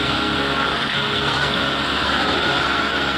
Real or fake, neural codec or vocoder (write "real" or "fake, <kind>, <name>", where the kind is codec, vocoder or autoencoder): fake, codec, SNAC